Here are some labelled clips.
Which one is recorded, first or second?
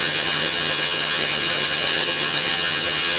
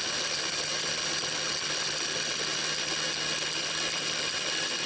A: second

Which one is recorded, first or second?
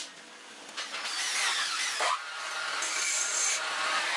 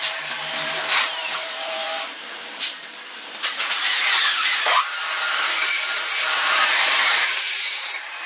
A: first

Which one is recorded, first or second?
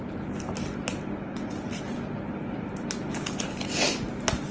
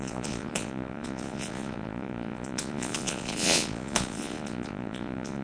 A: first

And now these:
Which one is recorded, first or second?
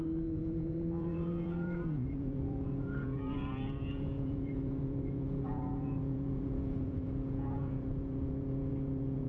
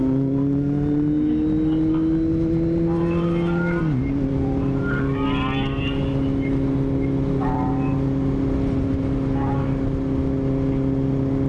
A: second